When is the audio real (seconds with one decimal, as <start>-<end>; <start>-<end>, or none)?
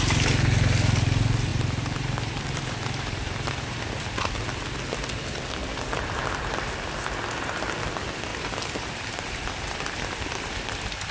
0.0-1.5; 4.0-8.3; 10.1-11.1